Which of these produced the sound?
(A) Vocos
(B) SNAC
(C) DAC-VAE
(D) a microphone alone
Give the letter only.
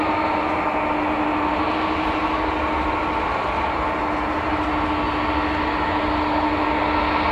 D